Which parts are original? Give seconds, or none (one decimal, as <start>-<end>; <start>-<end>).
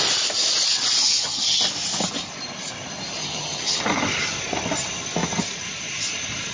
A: 0.0-1.0; 1.6-3.2; 3.8-6.5